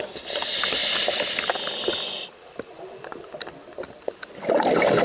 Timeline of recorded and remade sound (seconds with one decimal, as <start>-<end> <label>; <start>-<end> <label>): 0.0-5.0 recorded